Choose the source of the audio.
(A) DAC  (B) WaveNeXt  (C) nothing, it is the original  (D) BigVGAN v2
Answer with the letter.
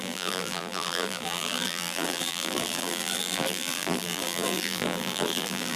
D